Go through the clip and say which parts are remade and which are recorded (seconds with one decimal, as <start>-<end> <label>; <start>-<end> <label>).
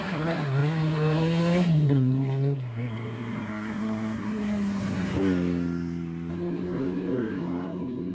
0.0-5.1 remade; 5.1-6.3 recorded; 6.3-8.1 remade